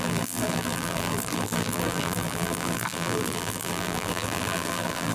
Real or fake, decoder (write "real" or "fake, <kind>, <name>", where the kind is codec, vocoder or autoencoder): fake, vocoder, BigVGAN v2